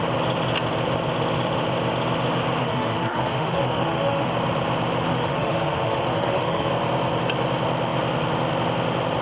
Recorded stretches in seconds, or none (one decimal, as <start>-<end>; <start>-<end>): 0.0-2.6; 4.3-5.1; 6.7-9.2